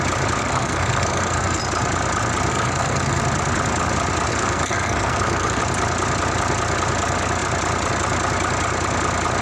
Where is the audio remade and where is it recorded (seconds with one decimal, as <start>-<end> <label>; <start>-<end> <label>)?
0.0-0.4 recorded; 0.4-1.6 remade; 1.6-2.5 recorded; 2.5-3.2 remade; 3.2-4.3 recorded; 4.3-5.6 remade; 5.6-9.4 recorded